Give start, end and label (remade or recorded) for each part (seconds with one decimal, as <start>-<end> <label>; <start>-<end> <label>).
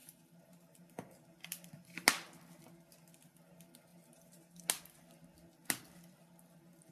0.0-1.1 remade; 1.1-3.9 recorded; 3.9-4.6 remade; 4.6-6.9 recorded